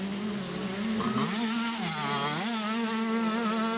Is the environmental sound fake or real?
real